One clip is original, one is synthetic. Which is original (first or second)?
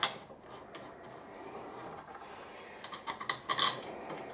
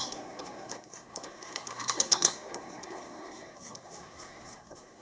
first